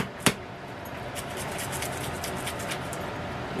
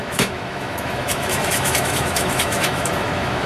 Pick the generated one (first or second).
second